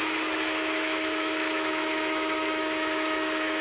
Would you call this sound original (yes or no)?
no